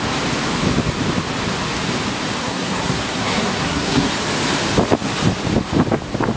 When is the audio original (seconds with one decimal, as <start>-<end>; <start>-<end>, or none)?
0.0-2.4; 4.1-6.4